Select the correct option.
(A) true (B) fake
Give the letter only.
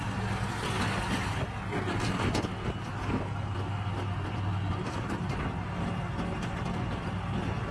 A